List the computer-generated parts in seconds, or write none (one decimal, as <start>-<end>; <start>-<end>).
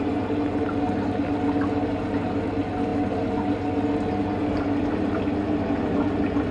none